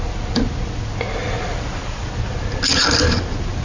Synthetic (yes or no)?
no